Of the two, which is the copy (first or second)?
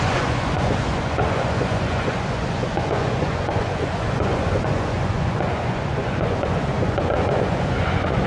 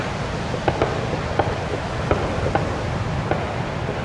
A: first